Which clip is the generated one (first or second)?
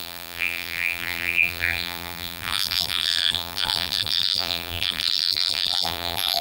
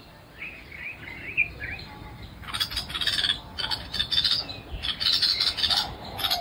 first